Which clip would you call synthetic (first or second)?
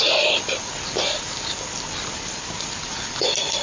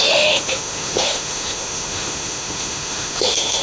second